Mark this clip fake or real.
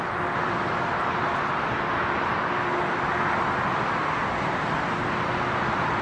real